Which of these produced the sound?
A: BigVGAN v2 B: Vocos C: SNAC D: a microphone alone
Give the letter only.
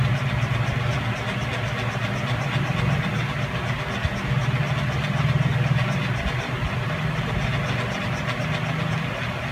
D